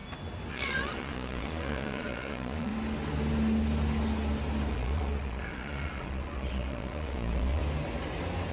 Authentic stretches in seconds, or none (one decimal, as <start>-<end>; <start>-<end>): 0.0-0.5; 2.7-4.7; 7.6-8.5